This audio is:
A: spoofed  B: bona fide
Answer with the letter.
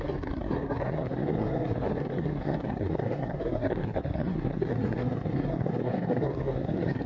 A